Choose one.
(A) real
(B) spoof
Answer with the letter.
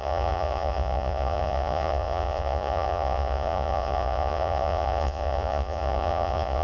B